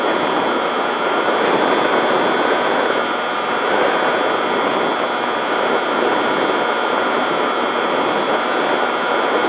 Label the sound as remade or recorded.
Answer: recorded